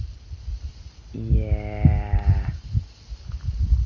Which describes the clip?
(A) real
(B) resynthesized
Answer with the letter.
A